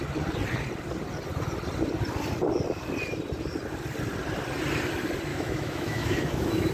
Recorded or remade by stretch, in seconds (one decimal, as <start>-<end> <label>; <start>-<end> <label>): 0.0-5.3 recorded; 5.3-6.7 remade